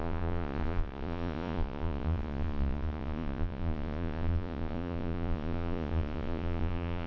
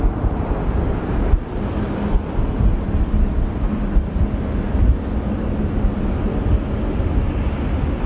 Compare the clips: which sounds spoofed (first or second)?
first